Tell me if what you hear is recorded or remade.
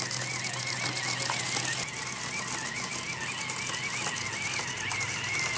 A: recorded